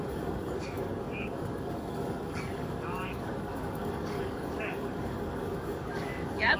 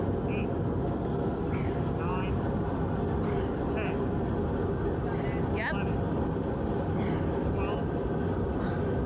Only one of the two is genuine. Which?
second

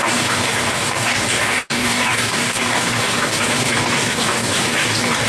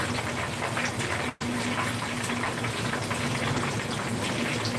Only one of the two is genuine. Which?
second